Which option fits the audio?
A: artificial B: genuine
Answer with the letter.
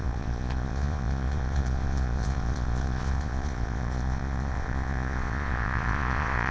A